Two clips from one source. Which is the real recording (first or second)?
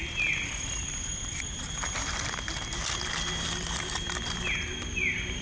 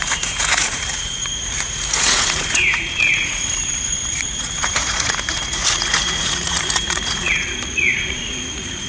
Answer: first